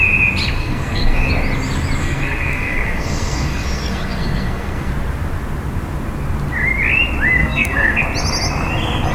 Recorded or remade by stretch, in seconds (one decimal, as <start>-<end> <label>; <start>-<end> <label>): 0.0-0.6 recorded; 0.6-1.3 remade; 1.3-2.0 recorded; 2.0-4.9 remade; 4.9-7.4 recorded; 7.4-8.0 remade; 8.0-9.1 recorded